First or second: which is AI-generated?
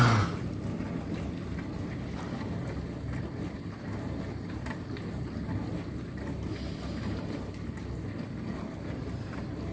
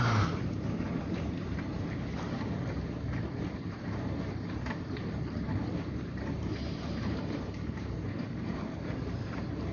second